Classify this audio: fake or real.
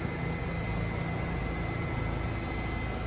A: real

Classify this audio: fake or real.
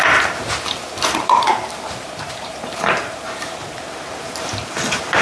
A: fake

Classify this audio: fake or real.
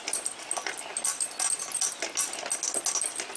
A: real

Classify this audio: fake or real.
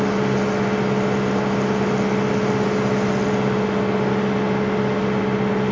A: real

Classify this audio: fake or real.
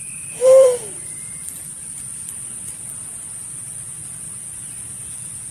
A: fake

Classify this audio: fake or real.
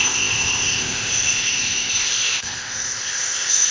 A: fake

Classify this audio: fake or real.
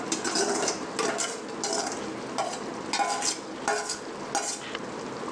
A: real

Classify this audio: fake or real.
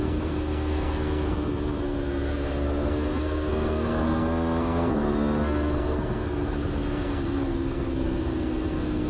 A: fake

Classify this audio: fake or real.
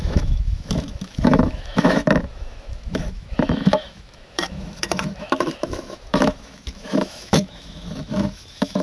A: fake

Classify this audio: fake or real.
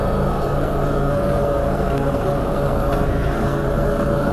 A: fake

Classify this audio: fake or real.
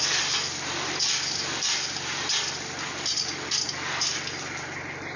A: real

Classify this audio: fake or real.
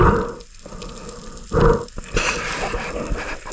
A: real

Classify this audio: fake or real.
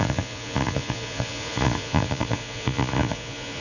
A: fake